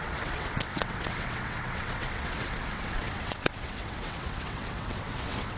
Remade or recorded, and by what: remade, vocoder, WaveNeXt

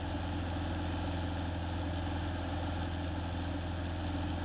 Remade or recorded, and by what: recorded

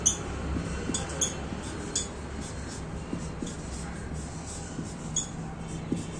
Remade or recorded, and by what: recorded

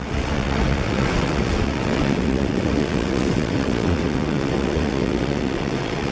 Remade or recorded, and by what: remade, vocoder, WaveNeXt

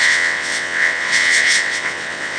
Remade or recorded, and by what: remade, vocoder, WaveNeXt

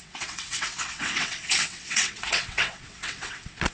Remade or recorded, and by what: remade, vocoder, WaveNeXt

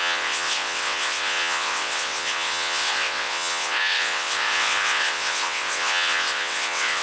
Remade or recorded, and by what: remade, vocoder, WaveNeXt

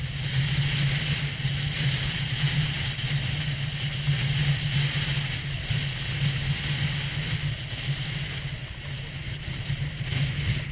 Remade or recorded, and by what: recorded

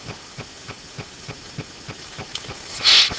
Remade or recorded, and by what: recorded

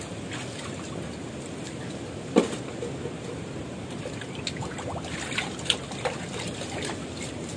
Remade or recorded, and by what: recorded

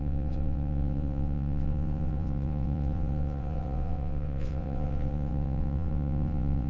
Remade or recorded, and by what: remade, vocoder, WaveNeXt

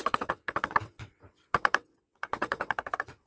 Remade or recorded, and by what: remade, vocoder, WaveNeXt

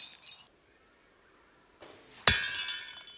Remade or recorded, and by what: recorded